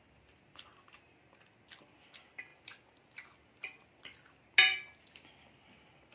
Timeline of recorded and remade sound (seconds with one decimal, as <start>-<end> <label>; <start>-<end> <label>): 0.0-6.1 recorded